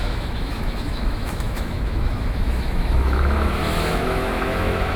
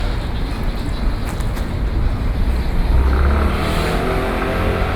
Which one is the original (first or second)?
second